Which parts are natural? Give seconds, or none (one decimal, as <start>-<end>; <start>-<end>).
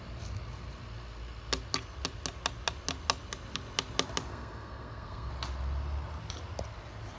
0.0-4.3; 5.3-7.2